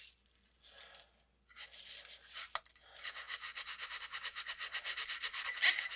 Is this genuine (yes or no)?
yes